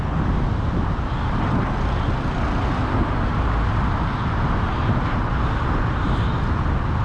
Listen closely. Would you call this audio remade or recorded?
recorded